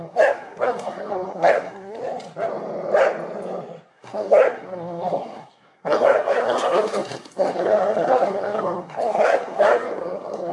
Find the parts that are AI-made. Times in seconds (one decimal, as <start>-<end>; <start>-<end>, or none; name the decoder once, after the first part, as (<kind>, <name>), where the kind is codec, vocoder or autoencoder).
0.0-2.0 (codec, SNAC); 3.9-10.5